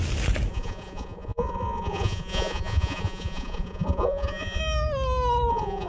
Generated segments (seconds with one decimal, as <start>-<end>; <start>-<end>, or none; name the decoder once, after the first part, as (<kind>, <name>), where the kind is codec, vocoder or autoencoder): 0.5-4.6 (vocoder, Vocos); 5.5-5.9